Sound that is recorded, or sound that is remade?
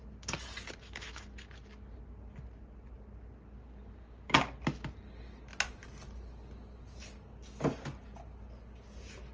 recorded